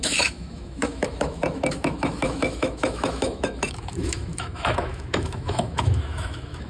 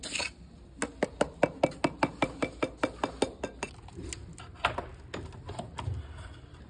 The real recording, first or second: second